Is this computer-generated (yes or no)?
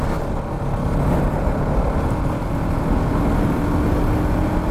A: no